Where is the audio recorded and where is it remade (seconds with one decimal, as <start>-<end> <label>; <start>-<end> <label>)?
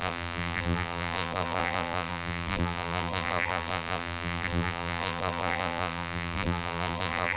0.0-7.4 remade